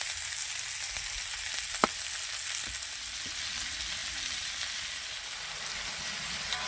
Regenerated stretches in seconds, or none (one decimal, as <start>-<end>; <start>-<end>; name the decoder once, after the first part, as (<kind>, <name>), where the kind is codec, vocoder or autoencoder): none